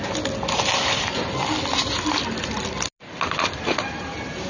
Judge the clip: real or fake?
real